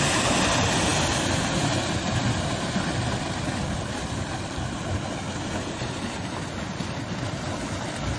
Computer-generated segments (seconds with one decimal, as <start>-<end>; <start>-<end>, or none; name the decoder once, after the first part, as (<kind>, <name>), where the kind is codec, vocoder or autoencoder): none